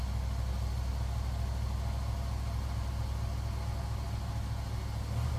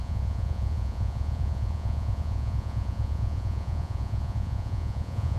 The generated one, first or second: second